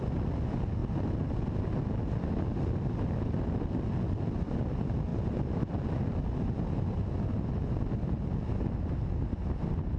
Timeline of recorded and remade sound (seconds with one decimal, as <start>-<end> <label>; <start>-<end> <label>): 0.0-10.0 recorded